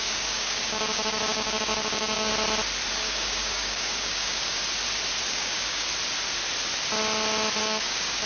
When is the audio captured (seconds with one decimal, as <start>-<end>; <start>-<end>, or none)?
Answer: 2.3-2.9; 4.6-5.3; 5.9-7.6